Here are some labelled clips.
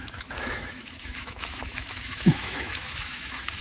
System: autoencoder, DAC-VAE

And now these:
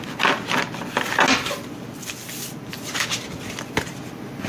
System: none